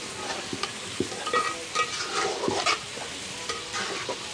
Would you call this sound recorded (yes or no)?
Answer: yes